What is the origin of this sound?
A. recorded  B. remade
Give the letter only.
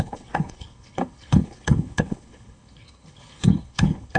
B